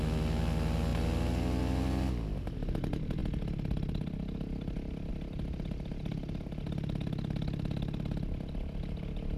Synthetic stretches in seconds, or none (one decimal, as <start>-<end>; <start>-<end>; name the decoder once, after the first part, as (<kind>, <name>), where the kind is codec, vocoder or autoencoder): none